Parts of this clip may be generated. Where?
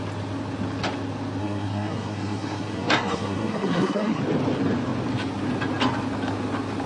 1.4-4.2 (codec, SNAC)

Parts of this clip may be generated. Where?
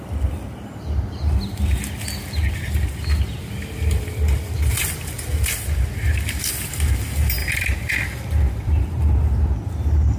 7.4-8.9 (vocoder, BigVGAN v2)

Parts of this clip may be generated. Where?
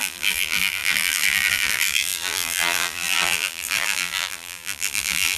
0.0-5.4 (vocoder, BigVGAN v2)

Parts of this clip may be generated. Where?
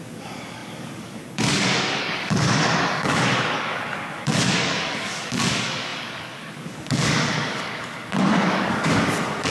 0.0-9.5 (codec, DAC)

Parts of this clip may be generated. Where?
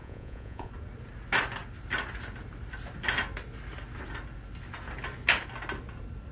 0.0-0.7 (vocoder, Vocos)